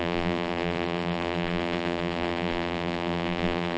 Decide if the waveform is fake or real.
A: fake